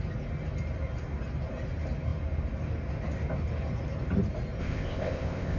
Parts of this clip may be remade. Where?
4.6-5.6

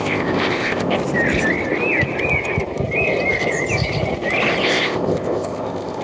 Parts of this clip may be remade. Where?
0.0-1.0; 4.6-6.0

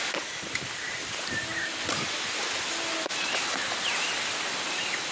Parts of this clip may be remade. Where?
none

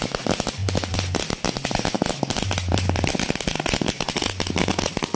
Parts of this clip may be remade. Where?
none